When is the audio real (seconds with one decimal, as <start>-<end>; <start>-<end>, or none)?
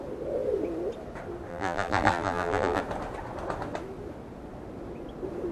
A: 0.0-1.5; 2.8-5.5